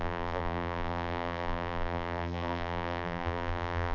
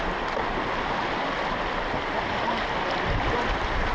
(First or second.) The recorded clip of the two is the second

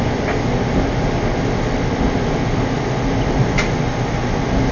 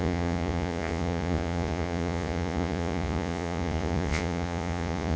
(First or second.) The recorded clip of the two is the first